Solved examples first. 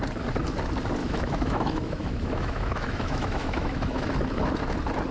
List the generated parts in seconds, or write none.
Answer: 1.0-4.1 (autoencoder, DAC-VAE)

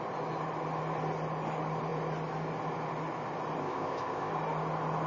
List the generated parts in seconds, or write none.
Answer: 3.6-4.3 (codec, ZipCodec)

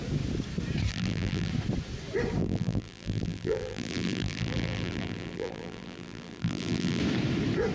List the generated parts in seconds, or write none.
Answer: 0.9-1.5 (vocoder, BigVGAN v2); 2.4-7.0

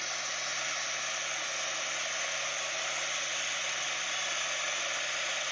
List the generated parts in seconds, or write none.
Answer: none

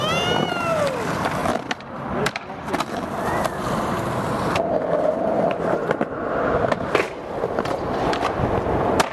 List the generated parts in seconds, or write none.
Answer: 1.4-5.5 (vocoder, BigVGAN v2); 7.2-8.4